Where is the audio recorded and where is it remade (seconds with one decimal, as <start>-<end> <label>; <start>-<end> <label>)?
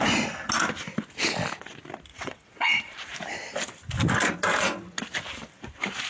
0.0-2.1 recorded; 2.1-2.8 remade; 2.8-6.1 recorded